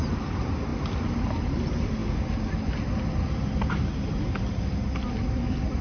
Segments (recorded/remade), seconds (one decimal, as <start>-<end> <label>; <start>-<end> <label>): 0.0-0.7 remade; 0.7-1.3 recorded; 1.3-2.0 remade; 2.0-5.3 recorded; 5.3-5.8 remade